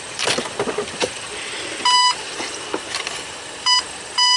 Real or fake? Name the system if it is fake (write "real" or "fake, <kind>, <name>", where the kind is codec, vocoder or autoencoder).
fake, vocoder, BigVGAN v2